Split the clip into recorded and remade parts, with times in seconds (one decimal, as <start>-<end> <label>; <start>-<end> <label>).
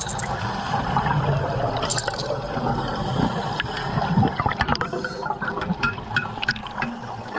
0.0-1.9 recorded; 1.9-2.6 remade; 2.6-4.7 recorded; 4.7-6.0 remade; 6.0-6.6 recorded; 6.6-7.4 remade